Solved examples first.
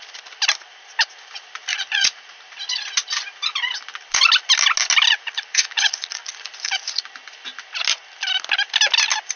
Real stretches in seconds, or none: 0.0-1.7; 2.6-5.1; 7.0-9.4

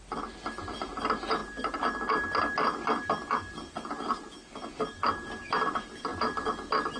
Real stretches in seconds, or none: 0.0-7.0

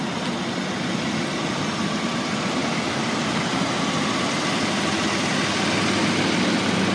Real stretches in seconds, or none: 0.0-6.9